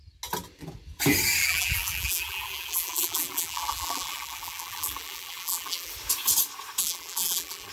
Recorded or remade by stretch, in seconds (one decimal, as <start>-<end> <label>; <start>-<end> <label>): 0.0-1.4 recorded; 1.4-5.9 remade; 5.9-6.8 recorded; 6.8-7.7 remade